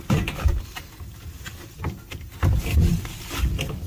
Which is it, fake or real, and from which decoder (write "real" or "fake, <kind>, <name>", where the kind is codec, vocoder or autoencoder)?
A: real